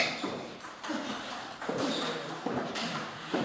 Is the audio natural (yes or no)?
no